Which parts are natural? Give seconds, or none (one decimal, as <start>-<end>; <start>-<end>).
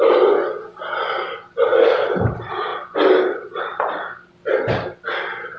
0.0-5.6